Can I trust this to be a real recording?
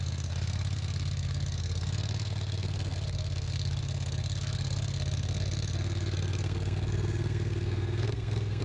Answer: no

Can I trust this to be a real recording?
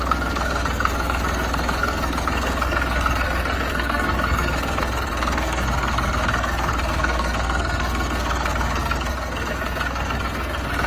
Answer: no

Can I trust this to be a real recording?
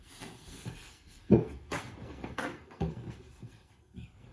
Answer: no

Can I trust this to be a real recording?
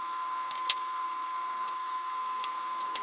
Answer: no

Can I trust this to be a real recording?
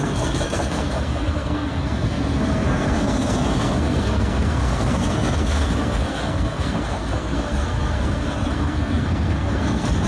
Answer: no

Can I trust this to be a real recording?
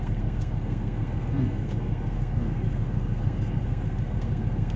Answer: no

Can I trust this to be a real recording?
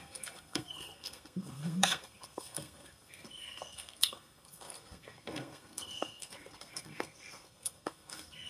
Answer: no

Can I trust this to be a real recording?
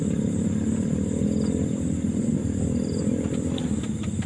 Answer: yes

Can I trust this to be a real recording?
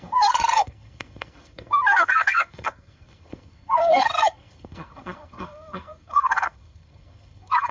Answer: no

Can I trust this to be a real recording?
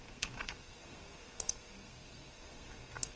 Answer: no